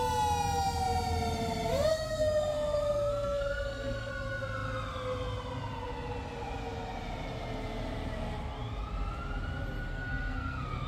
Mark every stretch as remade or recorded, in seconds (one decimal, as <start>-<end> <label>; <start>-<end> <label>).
0.0-1.9 recorded; 1.9-4.1 remade; 4.1-9.9 recorded; 9.9-10.9 remade